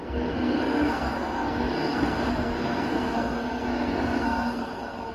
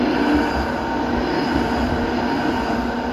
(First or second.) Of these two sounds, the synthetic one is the first